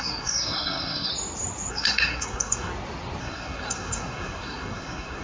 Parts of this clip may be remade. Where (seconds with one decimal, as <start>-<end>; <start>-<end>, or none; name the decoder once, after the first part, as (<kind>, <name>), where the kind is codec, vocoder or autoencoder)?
0.0-1.1 (codec, SNAC); 1.7-2.7; 3.2-5.2